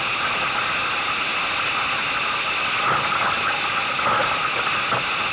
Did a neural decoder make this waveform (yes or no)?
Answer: no